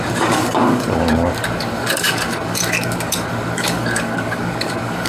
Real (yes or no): no